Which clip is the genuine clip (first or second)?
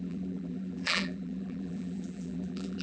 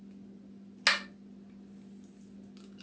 second